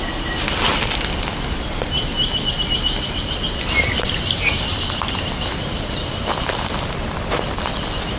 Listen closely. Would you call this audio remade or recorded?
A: recorded